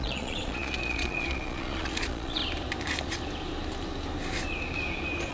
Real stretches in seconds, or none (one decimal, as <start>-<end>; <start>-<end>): 2.4-5.3